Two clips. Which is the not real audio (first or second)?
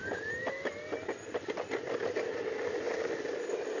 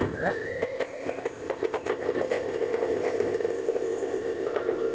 second